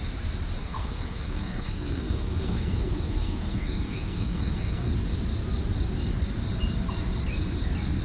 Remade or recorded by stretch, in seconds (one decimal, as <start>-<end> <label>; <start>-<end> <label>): 0.0-0.6 recorded; 0.6-4.9 remade; 4.9-8.0 recorded